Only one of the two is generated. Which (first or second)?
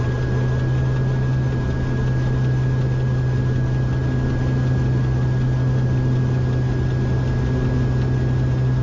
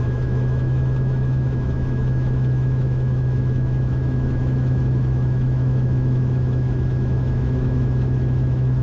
second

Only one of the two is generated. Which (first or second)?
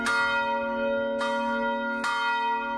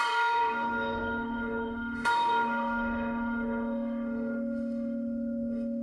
second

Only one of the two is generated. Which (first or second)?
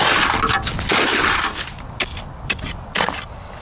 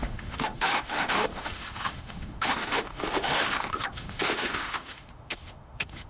second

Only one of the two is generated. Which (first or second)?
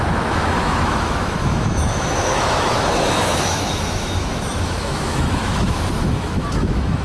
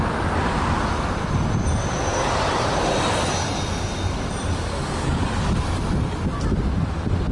first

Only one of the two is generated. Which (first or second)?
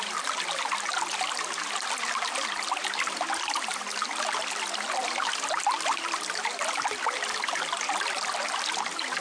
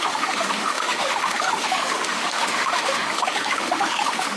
second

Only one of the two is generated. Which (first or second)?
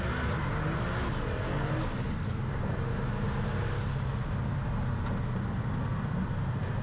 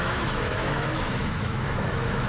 second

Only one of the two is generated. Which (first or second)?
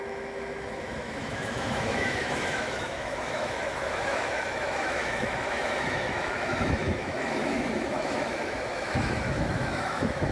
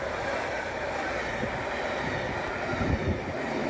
first